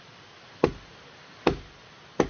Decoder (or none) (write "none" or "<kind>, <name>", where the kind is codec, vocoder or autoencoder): none